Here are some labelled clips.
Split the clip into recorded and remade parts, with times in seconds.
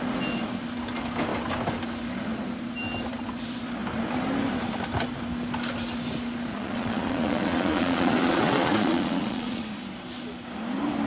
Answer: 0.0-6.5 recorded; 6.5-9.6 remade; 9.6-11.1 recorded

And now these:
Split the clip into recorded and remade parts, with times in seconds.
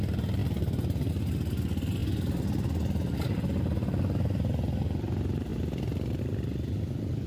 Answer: 0.0-7.3 recorded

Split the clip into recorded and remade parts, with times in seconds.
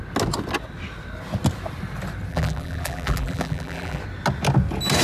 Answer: 0.0-2.3 recorded; 2.3-4.0 remade; 4.0-5.0 recorded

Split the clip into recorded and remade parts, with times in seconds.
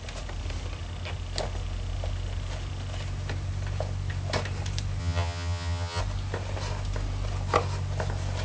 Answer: 0.0-5.0 recorded; 5.0-6.0 remade; 6.0-8.4 recorded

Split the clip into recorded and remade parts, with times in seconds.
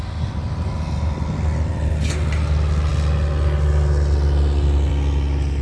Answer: 0.0-5.6 recorded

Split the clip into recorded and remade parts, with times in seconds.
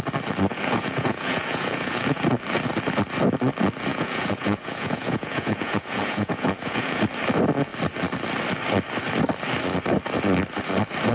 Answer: 0.0-0.5 recorded; 0.5-2.2 remade; 2.2-3.9 recorded; 3.9-7.0 remade; 7.0-11.1 recorded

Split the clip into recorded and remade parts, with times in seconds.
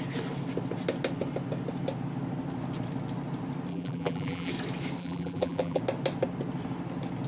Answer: 0.0-3.7 recorded; 3.7-4.5 remade; 4.5-5.0 recorded; 5.0-5.8 remade; 5.8-7.3 recorded